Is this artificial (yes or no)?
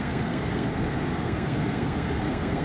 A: yes